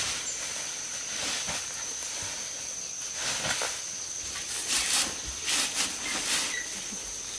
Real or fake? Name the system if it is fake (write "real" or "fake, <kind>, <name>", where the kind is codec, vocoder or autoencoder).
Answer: real